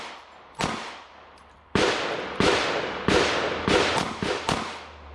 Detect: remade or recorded remade